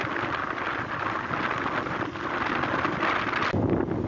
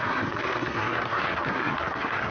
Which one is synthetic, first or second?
second